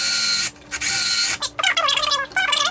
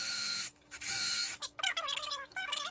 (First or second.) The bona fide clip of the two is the first